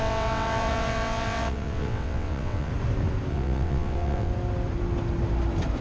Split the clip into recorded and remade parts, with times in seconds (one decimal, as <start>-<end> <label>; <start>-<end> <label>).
0.0-2.7 remade; 2.7-3.3 recorded; 3.3-4.3 remade; 4.3-5.8 recorded